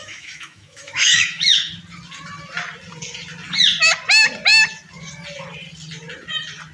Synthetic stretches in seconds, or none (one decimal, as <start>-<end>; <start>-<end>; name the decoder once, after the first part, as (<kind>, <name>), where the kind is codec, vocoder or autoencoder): 0.0-1.7 (autoencoder, DAC-VAE)